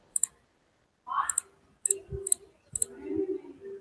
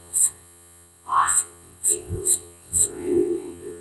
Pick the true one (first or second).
first